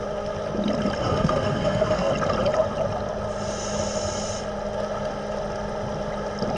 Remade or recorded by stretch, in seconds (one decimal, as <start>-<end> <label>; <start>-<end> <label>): 0.0-1.0 recorded; 1.0-2.1 remade; 2.1-6.6 recorded